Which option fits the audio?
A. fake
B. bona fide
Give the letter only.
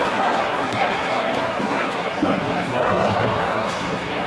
A